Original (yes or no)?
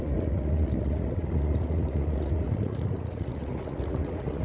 no